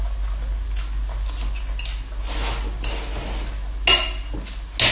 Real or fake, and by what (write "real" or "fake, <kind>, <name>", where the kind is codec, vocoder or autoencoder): real